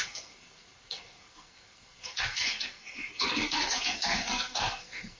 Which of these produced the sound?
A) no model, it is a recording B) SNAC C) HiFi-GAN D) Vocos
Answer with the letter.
B